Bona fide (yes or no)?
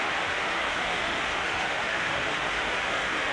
no